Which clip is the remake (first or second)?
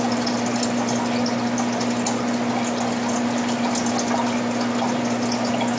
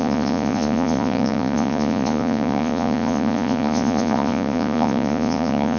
second